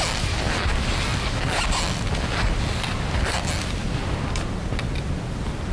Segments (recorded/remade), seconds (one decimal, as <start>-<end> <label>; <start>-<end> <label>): 0.0-5.7 recorded